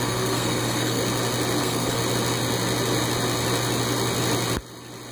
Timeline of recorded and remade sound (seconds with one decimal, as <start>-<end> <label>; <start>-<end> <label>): 0.0-1.0 remade; 1.0-1.6 recorded; 1.6-2.0 remade; 2.0-5.1 recorded